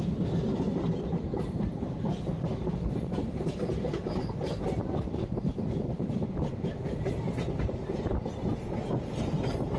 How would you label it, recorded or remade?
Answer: recorded